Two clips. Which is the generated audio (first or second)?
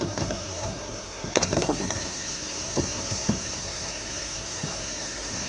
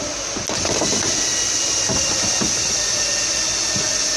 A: first